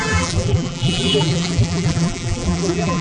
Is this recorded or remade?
remade